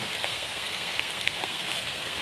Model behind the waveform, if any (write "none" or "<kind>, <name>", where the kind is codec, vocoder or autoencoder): codec, SNAC